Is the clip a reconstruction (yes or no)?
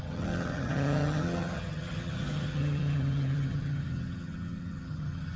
yes